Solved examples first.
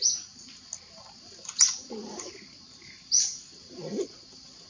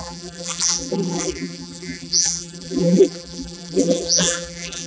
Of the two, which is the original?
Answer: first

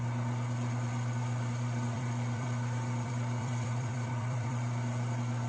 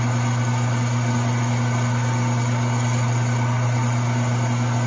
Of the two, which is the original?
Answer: second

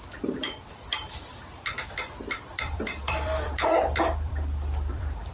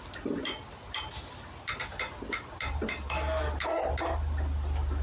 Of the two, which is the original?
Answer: second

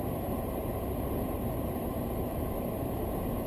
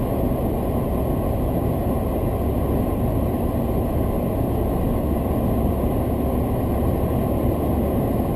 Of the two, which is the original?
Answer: second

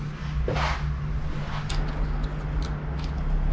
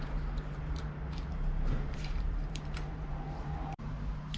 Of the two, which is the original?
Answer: first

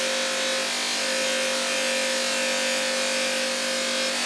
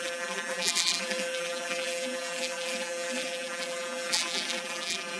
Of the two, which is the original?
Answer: first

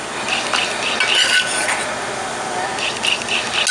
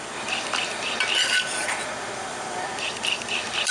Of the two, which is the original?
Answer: first